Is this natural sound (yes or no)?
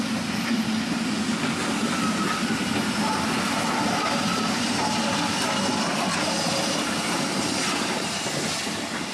yes